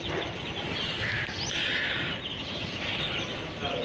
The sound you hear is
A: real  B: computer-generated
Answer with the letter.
A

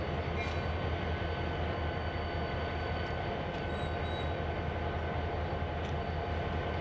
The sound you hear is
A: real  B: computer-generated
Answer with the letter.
A